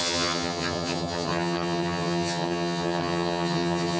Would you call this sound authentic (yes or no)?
no